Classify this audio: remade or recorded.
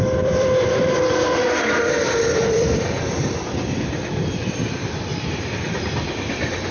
remade